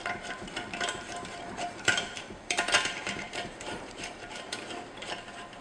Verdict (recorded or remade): remade